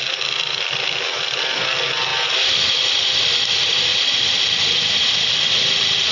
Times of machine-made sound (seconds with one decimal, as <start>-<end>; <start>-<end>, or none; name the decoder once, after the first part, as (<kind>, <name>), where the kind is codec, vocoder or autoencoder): 2.1-3.1 (vocoder, BigVGAN v2); 3.9-5.0